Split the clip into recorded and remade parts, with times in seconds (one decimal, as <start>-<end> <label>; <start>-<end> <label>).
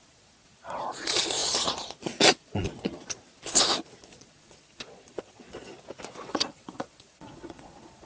0.0-3.3 remade; 3.3-4.0 recorded; 4.0-5.7 remade; 5.7-6.2 recorded; 6.2-8.1 remade